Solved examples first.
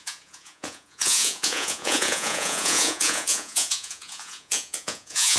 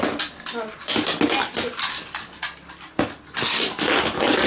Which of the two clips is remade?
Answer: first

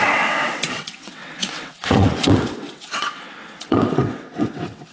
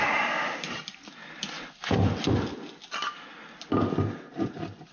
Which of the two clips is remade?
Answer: first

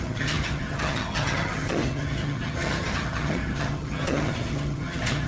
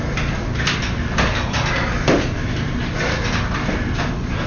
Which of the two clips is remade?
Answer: first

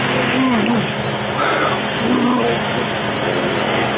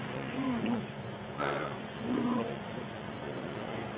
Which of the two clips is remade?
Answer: second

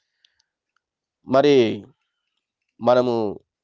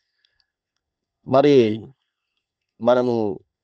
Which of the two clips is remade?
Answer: second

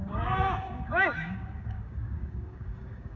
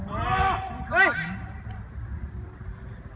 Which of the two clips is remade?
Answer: first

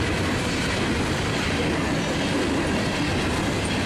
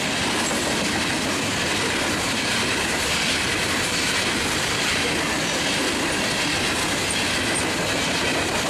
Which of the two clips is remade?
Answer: second